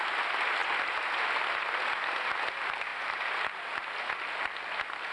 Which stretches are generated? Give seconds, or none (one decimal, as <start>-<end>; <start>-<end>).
2.9-3.7